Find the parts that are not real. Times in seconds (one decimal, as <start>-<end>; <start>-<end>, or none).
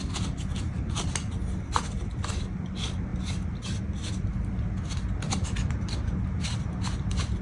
none